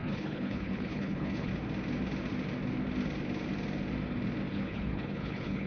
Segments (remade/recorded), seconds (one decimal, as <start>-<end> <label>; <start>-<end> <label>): 0.0-1.5 remade; 1.5-4.5 recorded; 4.5-5.7 remade